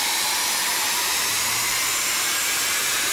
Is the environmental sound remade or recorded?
remade